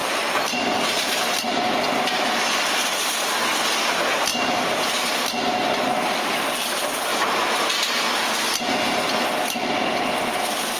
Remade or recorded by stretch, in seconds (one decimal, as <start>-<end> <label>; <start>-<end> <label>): 0.0-1.7 remade; 1.7-4.3 recorded; 4.3-6.1 remade; 6.1-7.1 recorded; 7.1-7.9 remade; 7.9-10.8 recorded